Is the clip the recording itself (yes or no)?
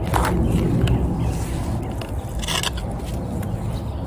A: yes